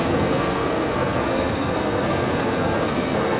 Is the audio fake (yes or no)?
yes